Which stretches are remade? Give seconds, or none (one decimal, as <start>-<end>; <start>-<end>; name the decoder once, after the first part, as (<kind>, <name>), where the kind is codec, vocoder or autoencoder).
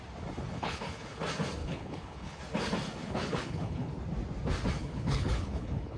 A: 0.5-1.2 (codec, HILCodec); 1.6-2.4; 3.0-3.9; 4.8-6.0